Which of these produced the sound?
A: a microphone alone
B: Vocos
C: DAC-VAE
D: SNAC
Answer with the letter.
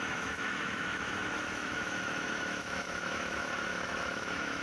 C